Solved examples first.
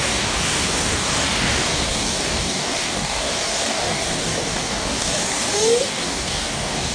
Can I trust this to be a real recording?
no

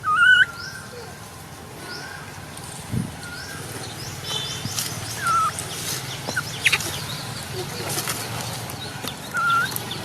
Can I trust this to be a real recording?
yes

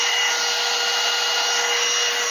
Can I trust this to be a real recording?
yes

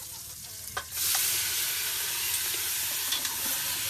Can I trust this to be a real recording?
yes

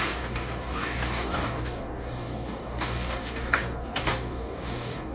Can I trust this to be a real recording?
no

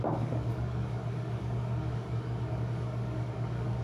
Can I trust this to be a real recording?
no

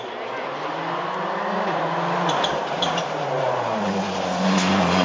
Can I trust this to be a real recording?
yes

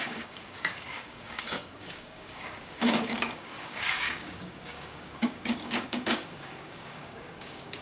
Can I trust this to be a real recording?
no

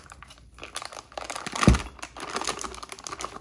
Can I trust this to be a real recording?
yes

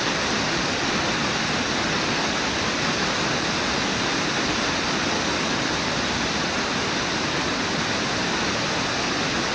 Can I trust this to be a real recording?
yes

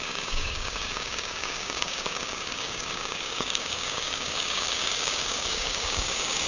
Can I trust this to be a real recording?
no